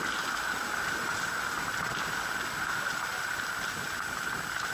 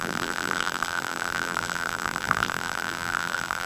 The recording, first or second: first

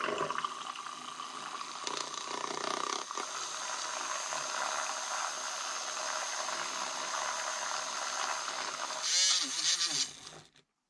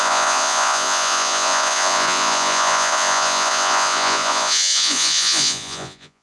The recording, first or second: first